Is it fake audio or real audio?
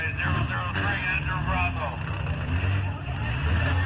real